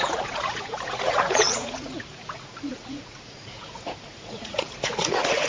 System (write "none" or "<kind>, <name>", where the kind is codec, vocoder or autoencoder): vocoder, Vocos